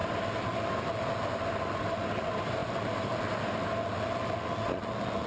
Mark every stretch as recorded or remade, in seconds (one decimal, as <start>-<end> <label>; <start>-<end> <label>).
0.0-5.3 recorded